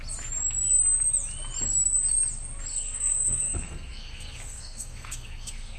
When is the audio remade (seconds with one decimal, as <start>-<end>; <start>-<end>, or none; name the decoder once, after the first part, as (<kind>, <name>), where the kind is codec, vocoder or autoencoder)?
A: 2.7-5.8 (codec, SNAC)